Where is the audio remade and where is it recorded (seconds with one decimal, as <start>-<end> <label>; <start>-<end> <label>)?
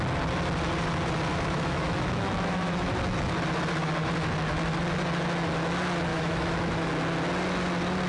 0.0-1.3 recorded; 1.3-2.9 remade; 2.9-6.1 recorded; 6.1-6.9 remade; 6.9-8.1 recorded